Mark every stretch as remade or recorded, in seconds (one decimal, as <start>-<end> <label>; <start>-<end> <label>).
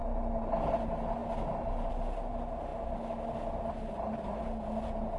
0.0-5.2 recorded